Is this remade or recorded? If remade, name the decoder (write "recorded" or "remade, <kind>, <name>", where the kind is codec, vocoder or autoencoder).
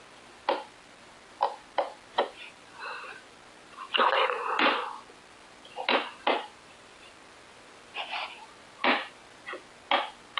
recorded